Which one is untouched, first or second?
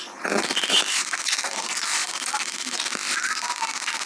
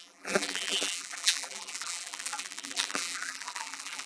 first